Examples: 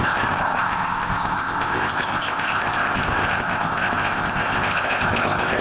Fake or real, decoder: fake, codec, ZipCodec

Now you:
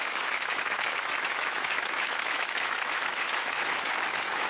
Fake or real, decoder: fake, autoencoder, DAC-VAE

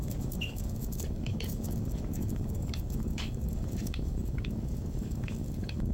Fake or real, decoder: fake, codec, DAC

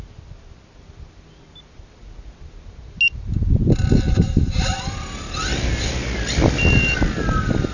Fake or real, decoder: real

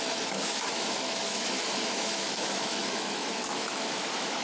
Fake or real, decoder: fake, autoencoder, DAC-VAE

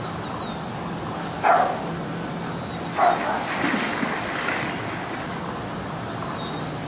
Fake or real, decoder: real